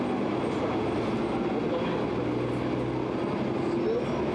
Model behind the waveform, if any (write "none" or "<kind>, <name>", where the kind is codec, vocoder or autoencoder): none